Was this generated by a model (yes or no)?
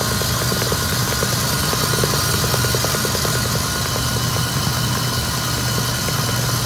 no